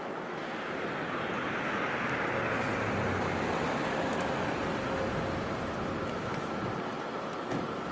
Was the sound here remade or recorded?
recorded